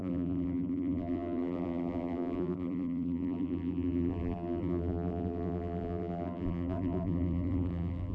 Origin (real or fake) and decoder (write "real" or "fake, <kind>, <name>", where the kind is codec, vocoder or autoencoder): fake, vocoder, BigVGAN v2